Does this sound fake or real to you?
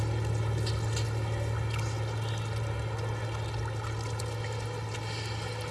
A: real